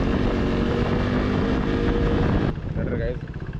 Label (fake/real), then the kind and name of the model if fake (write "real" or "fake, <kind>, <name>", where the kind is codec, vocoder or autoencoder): real